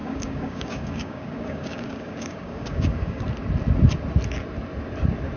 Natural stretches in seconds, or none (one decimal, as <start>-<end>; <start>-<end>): 3.2-5.4